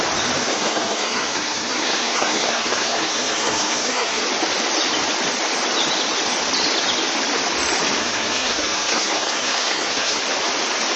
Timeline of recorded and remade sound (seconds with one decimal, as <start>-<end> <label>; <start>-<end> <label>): 0.0-0.4 recorded; 0.4-4.2 remade; 4.2-8.0 recorded; 8.0-10.2 remade; 10.2-11.0 recorded